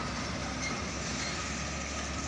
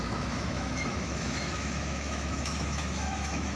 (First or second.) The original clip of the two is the first